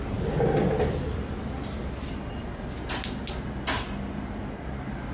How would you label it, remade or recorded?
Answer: recorded